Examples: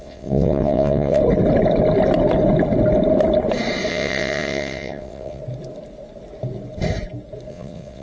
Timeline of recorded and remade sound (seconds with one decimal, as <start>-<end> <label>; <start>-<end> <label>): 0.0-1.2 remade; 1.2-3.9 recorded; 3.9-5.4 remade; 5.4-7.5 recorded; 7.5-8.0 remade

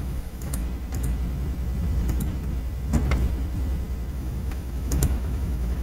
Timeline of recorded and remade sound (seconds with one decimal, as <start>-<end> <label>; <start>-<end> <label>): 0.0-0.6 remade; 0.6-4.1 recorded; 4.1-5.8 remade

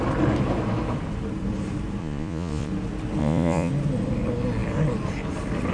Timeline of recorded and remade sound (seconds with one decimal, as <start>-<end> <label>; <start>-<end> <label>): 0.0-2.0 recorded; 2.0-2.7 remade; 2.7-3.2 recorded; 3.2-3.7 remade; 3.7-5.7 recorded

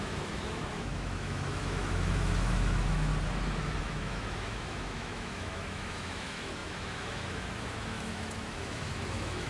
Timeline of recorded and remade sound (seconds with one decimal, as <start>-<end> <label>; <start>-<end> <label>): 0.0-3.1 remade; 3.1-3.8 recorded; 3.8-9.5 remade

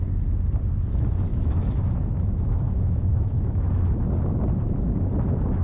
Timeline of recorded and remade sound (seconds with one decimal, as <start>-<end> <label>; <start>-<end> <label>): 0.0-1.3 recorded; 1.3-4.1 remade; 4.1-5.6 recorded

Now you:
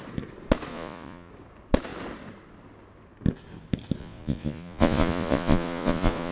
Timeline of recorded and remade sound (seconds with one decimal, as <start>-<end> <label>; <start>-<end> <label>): 0.0-0.7 recorded; 0.7-1.3 remade; 1.3-4.0 recorded; 4.0-6.3 remade

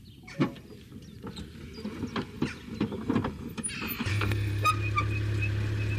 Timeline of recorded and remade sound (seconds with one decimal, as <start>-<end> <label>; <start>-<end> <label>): 0.0-4.1 recorded; 4.1-4.7 remade; 4.7-6.0 recorded